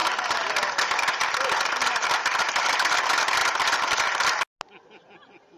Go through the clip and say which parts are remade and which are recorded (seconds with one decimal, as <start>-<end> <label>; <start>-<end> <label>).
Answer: 0.0-5.6 recorded